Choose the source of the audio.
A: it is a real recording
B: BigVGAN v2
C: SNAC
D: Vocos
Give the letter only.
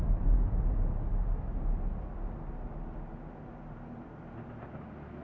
A